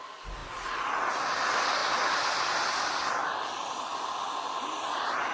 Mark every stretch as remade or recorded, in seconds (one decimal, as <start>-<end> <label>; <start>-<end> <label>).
0.0-0.4 remade; 0.4-1.1 recorded; 1.1-5.3 remade